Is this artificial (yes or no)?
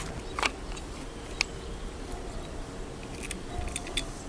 no